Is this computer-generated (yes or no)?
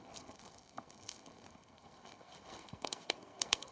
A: yes